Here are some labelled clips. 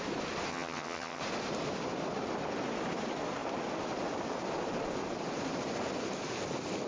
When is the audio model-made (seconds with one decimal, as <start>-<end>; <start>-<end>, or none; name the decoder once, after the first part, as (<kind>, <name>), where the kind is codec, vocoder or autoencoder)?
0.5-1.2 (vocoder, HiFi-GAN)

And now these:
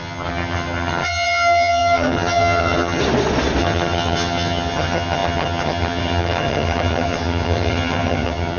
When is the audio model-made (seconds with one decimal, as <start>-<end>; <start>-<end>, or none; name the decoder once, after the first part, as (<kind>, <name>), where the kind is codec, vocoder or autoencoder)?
0.0-3.0 (vocoder, HiFi-GAN); 3.6-8.6

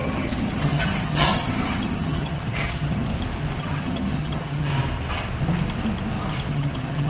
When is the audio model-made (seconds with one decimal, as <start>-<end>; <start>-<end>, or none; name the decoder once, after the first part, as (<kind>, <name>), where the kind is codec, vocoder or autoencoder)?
0.0-3.1 (vocoder, HiFi-GAN); 3.6-4.7; 6.5-7.1

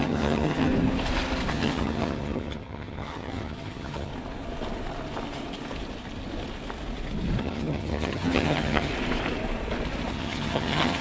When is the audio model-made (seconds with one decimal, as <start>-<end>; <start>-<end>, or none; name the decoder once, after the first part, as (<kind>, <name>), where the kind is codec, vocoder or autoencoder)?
0.0-0.7 (vocoder, HiFi-GAN); 1.5-4.1; 7.4-8.9; 10.1-11.0

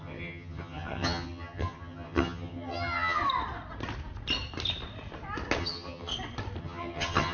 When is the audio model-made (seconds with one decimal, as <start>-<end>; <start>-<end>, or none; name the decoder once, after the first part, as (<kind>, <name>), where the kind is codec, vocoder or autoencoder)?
0.0-3.2 (vocoder, HiFi-GAN); 5.6-6.1; 6.6-7.3